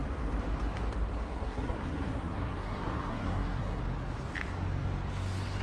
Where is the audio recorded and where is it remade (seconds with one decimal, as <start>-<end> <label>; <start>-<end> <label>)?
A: 0.0-1.3 recorded; 1.3-3.8 remade; 3.8-5.6 recorded